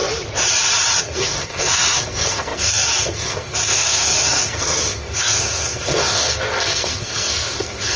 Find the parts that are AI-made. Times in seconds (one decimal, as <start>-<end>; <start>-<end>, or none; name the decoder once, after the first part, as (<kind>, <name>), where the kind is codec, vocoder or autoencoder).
1.0-8.0 (codec, SNAC)

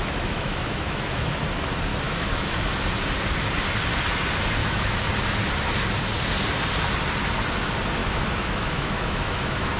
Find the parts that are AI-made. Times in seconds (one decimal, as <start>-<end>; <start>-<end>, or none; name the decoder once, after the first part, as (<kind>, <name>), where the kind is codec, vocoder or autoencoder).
0.0-1.4 (autoencoder, DAC-VAE); 1.9-2.7; 4.6-5.1; 8.0-9.8

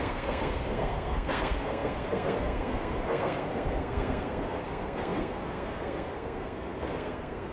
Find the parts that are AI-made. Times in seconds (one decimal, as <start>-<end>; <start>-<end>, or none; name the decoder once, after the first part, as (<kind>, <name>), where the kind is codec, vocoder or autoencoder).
0.0-7.5 (codec, SNAC)